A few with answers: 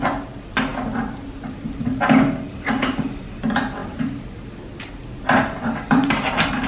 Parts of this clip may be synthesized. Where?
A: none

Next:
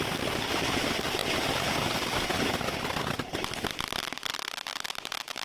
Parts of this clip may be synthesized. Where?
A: none

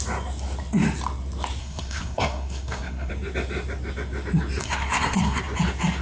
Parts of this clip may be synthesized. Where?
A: 1.6-3.1; 4.6-5.4

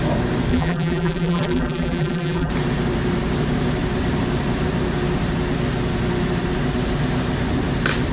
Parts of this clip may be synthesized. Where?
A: 0.5-2.5

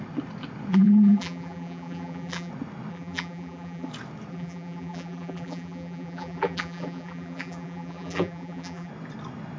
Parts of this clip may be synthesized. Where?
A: 0.7-2.5; 2.9-3.9; 4.3-8.9

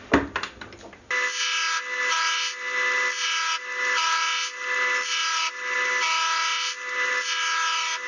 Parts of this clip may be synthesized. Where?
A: none

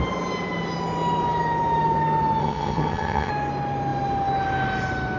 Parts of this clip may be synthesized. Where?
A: 2.4-3.3

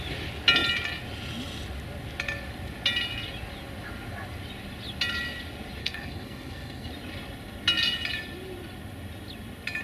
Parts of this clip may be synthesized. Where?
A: 5.8-6.9